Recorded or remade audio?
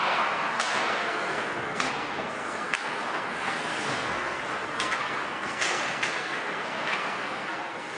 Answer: remade